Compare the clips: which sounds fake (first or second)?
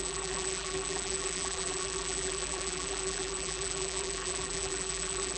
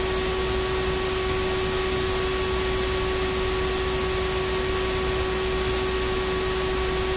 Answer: first